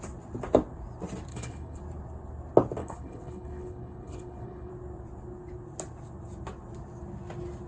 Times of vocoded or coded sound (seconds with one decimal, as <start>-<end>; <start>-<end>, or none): 1.3-1.8; 2.8-4.7

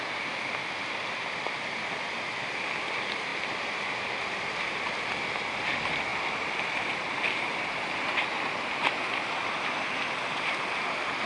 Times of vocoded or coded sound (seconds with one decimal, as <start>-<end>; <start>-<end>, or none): none

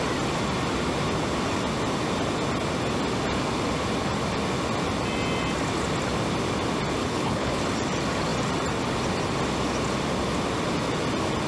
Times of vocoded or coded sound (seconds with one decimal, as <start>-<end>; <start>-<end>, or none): 7.0-7.6

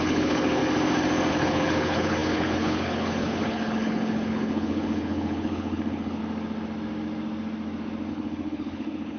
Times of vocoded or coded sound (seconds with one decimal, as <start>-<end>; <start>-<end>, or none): 0.0-0.6; 1.3-6.2; 8.1-9.2

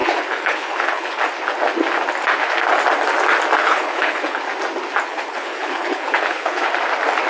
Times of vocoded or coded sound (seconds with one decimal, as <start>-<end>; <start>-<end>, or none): 0.0-1.2; 3.6-4.4; 5.1-6.7

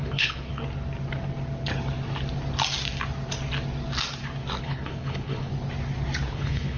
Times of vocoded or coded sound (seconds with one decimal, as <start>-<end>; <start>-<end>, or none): 0.0-0.5; 4.6-5.5; 6.3-6.8

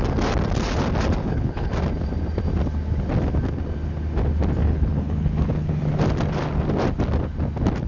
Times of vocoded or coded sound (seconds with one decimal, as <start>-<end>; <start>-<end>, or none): 1.2-1.7; 4.6-5.8